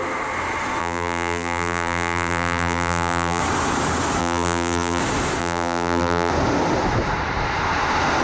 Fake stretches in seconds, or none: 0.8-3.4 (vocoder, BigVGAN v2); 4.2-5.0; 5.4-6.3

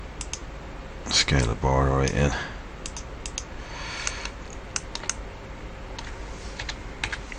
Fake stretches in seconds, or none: none

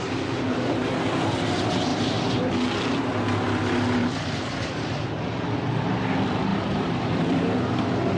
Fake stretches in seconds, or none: 1.9-3.1 (vocoder, BigVGAN v2); 4.0-5.9; 6.5-7.6